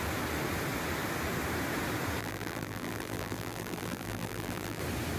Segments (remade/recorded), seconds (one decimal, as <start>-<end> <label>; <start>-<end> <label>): 0.0-2.2 recorded; 2.2-4.8 remade; 4.8-5.2 recorded